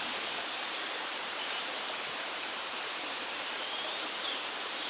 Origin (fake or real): fake